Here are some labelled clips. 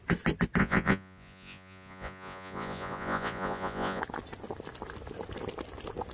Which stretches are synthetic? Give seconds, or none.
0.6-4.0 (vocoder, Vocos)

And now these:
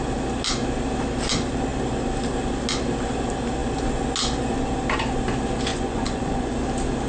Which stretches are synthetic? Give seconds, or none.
5.7-6.5 (vocoder, Vocos)

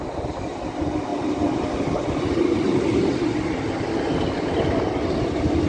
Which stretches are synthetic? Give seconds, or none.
none

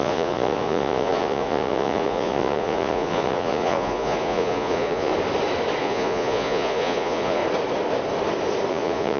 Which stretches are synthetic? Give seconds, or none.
0.0-5.1 (vocoder, Vocos); 5.8-7.4; 8.7-9.2

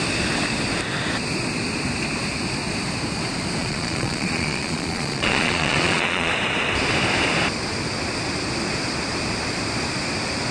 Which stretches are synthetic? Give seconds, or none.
3.6-6.3 (vocoder, Vocos)